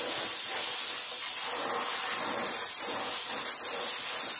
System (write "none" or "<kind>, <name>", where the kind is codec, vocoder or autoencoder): none